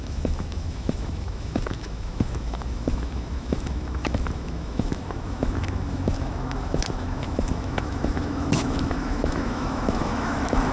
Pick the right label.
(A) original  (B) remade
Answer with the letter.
B